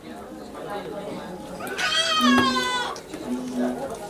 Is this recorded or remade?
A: recorded